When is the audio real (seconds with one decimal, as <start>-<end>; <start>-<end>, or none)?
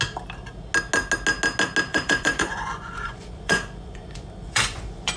0.0-1.9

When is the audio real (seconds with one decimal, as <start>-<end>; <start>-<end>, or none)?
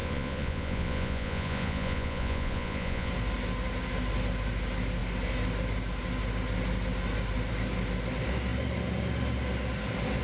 3.1-10.2